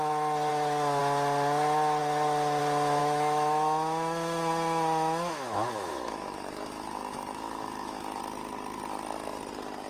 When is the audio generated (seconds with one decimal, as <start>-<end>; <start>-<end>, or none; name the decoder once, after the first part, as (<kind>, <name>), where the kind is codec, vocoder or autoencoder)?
0.5-1.0 (autoencoder, DAC-VAE); 3.0-8.2